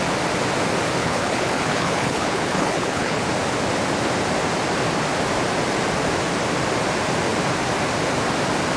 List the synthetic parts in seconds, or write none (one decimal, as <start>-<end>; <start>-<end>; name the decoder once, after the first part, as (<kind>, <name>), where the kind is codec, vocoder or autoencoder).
1.0-3.2 (codec, HILCodec)